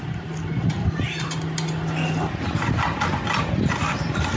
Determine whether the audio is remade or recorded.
recorded